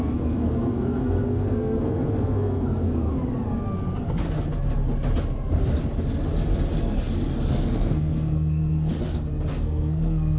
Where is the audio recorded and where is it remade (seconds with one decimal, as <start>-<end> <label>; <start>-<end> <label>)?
0.0-3.1 remade; 3.1-7.5 recorded; 7.5-8.9 remade; 8.9-9.5 recorded; 9.5-10.4 remade